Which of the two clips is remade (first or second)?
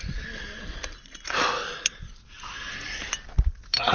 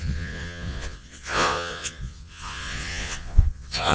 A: second